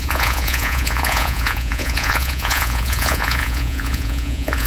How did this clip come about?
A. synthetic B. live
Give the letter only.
A